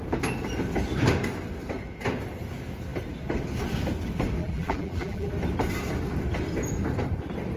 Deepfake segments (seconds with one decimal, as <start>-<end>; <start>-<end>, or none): 4.4-5.3